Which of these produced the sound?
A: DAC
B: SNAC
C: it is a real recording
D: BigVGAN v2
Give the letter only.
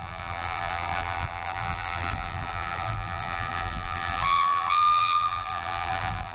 D